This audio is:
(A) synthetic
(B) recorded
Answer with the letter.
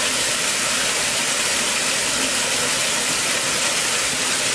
B